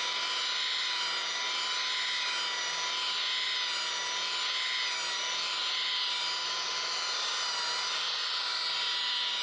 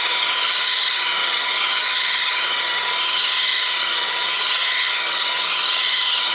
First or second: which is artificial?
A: second